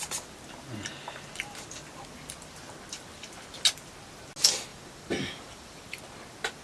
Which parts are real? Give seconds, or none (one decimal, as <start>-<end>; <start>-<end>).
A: 0.0-4.7; 6.0-6.6